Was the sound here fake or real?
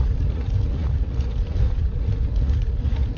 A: fake